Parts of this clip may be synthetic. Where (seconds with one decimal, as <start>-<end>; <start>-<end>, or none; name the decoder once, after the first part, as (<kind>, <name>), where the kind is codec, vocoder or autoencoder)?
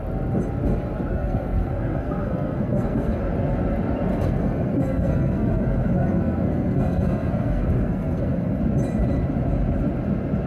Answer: 1.1-3.2 (codec, SNAC); 4.1-8.6